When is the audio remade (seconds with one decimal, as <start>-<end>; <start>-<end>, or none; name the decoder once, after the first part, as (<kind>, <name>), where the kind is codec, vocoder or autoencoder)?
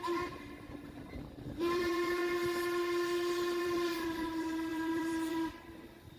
0.0-2.2 (vocoder, BigVGAN v2); 3.6-6.2